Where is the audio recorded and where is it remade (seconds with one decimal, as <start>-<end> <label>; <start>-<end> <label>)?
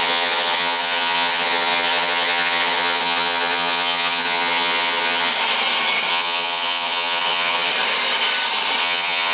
0.0-5.3 remade; 5.3-6.1 recorded; 6.1-7.7 remade; 7.7-8.8 recorded; 8.8-9.3 remade